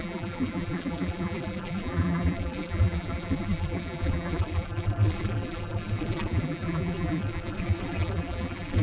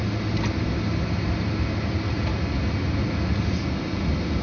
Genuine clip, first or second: second